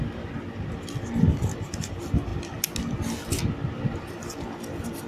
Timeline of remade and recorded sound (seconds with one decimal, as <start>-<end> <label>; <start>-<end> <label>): 0.0-5.1 recorded